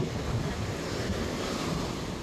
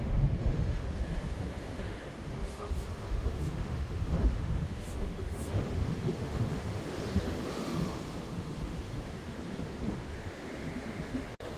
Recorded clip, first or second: first